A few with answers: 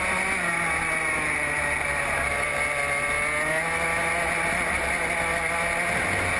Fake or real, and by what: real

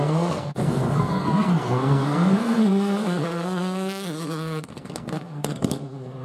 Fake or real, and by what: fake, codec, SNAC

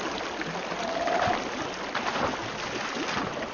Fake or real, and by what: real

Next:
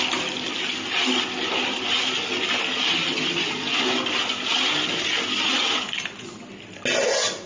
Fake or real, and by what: real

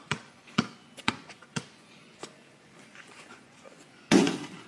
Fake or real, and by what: fake, vocoder, Vocos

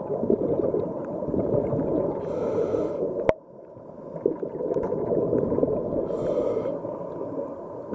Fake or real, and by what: real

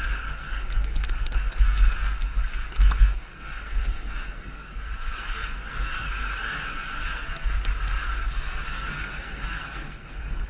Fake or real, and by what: fake, codec, SNAC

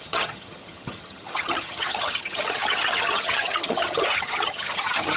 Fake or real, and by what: fake, vocoder, HiFi-GAN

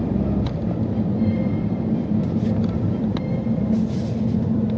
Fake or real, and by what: fake, vocoder, BigVGAN v2